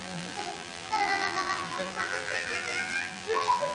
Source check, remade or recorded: remade